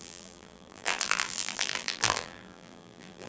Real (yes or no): no